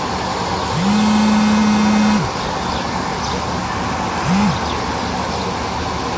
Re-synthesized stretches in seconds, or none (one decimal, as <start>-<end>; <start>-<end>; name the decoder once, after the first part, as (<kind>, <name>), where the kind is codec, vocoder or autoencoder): none